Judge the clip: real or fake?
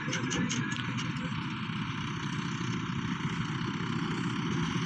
real